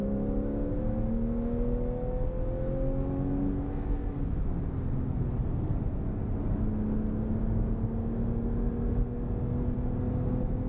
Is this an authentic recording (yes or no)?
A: yes